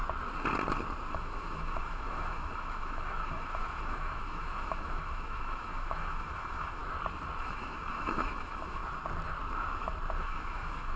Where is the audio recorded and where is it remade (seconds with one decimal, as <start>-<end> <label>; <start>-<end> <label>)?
0.0-1.1 recorded; 1.1-6.8 remade; 6.8-7.4 recorded; 7.4-8.8 remade; 8.8-10.2 recorded; 10.2-11.0 remade